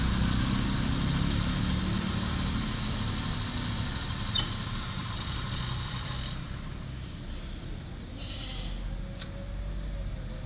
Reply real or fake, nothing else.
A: real